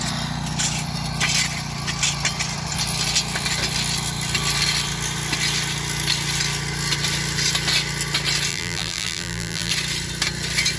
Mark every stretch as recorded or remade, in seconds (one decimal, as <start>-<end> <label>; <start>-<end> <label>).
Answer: 0.0-8.5 recorded; 8.5-9.7 remade; 9.7-10.8 recorded